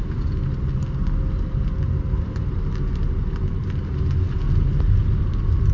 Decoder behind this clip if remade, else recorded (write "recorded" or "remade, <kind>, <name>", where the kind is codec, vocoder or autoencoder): remade, vocoder, BigVGAN v2